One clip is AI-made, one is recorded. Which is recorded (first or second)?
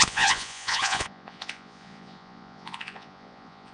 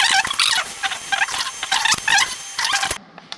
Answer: second